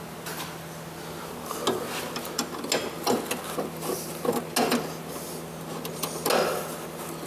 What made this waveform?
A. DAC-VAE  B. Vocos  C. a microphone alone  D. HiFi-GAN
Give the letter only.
C